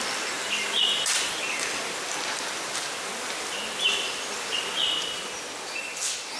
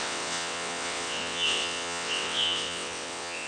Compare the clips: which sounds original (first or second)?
first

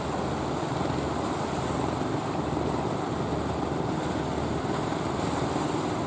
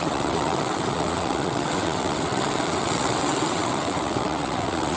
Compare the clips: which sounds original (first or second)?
first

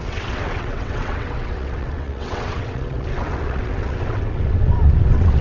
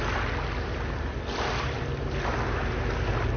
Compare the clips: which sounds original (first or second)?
second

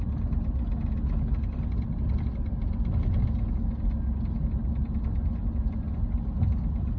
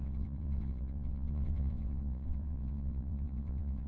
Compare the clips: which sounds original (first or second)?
first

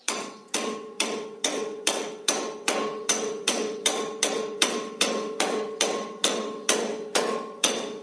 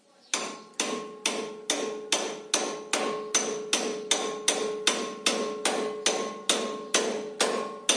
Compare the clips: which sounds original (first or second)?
second